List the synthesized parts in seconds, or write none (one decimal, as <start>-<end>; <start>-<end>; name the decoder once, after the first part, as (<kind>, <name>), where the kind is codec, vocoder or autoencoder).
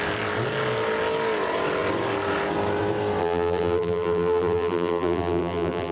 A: 3.2-5.9 (vocoder, BigVGAN v2)